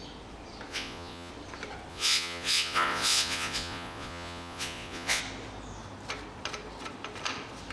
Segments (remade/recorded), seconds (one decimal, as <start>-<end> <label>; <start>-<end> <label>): 0.0-0.7 recorded; 0.7-1.3 remade; 1.3-1.9 recorded; 1.9-5.2 remade; 5.2-7.7 recorded